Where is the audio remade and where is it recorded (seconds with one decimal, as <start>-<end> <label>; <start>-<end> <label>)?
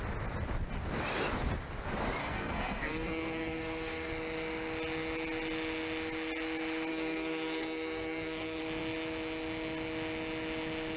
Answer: 0.0-2.2 recorded; 2.2-4.1 remade; 4.1-6.9 recorded; 6.9-8.6 remade; 8.6-11.0 recorded